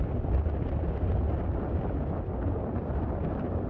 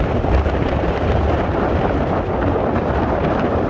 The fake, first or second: second